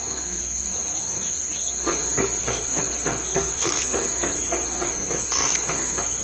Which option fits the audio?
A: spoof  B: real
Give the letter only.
A